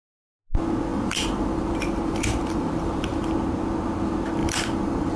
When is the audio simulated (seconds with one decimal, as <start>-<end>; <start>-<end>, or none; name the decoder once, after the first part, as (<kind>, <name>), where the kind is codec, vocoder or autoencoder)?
0.9-3.3 (vocoder, BigVGAN v2); 4.4-5.2

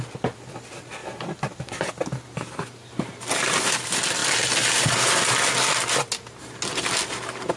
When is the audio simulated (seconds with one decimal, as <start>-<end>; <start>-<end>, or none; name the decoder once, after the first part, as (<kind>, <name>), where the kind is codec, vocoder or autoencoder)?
1.0-2.0 (vocoder, BigVGAN v2)